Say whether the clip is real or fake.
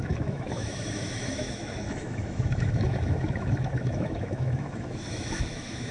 fake